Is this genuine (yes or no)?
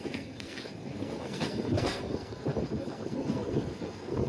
no